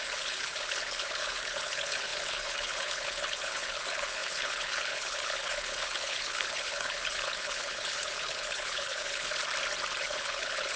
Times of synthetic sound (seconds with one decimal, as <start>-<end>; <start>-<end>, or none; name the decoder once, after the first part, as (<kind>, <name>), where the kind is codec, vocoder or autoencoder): 0.0-9.4 (codec, HILCodec); 10.0-10.8